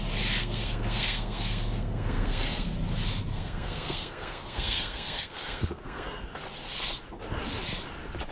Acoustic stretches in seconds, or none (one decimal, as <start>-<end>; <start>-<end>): 0.0-0.4; 2.7-3.3; 6.2-8.3

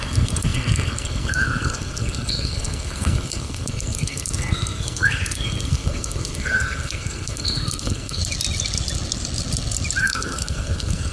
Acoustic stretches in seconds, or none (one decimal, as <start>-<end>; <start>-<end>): 8.2-10.0

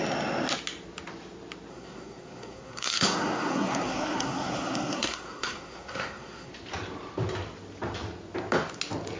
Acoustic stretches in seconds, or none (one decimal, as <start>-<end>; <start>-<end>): 0.0-1.7; 6.5-9.2

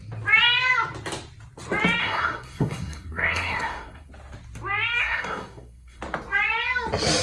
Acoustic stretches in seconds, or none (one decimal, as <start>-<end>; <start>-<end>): 0.0-2.0; 4.1-5.0; 6.0-7.2

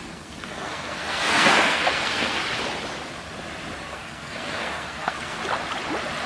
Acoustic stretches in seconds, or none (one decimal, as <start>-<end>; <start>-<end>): 2.4-3.8; 5.4-6.3

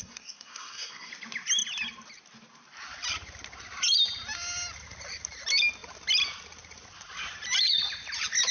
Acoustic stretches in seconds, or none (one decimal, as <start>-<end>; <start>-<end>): 1.1-8.5